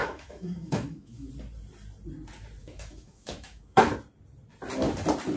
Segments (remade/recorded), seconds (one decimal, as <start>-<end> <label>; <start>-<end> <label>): 0.0-1.3 remade; 1.3-2.6 recorded; 2.6-3.9 remade; 3.9-5.4 recorded